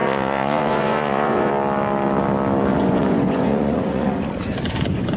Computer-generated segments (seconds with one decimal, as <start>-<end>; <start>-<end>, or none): 0.0-1.5; 2.7-5.2